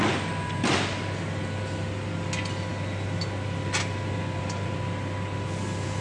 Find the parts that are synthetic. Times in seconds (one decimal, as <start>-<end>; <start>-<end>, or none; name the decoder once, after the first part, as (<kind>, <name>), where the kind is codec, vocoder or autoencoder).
none